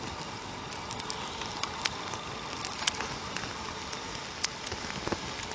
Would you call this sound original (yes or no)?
yes